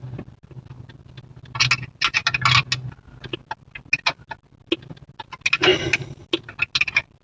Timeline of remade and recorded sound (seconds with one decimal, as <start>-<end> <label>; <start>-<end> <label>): 0.0-7.2 recorded